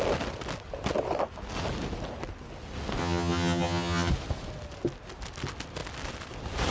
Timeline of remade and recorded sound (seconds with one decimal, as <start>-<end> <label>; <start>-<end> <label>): 0.0-3.0 recorded; 3.0-4.1 remade; 4.1-6.7 recorded